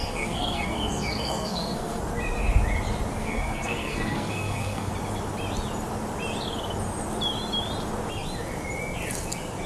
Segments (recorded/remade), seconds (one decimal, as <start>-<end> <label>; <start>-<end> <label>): 0.0-2.0 remade; 2.0-3.2 recorded; 3.2-4.9 remade; 4.9-9.7 recorded